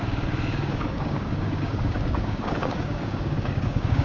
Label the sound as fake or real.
fake